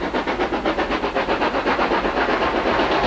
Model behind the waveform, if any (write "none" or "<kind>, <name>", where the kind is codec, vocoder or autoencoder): none